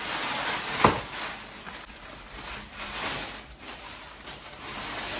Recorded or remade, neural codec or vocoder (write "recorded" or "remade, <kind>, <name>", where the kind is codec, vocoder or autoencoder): recorded